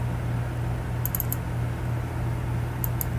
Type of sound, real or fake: real